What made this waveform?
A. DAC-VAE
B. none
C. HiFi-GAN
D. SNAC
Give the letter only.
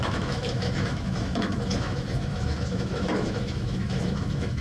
A